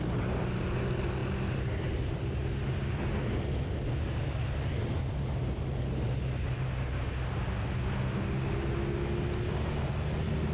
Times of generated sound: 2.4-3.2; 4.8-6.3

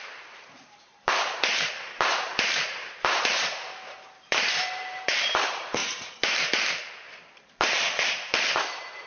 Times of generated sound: 0.0-9.1